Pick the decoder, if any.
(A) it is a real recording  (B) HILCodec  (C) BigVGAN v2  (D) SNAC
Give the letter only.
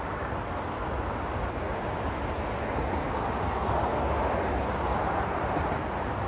A